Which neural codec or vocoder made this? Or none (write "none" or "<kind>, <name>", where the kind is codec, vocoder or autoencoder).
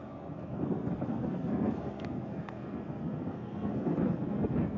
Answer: codec, SNAC